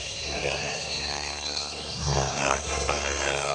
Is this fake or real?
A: fake